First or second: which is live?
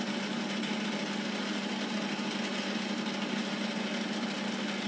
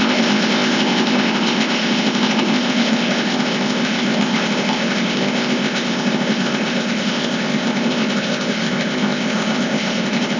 first